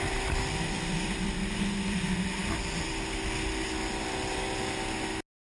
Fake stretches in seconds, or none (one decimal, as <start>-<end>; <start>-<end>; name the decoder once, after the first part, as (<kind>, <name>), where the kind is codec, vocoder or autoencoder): none